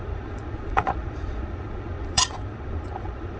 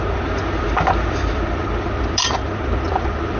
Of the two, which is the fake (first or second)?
first